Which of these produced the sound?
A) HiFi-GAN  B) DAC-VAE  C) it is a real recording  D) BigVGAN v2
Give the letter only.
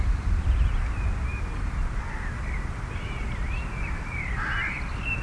D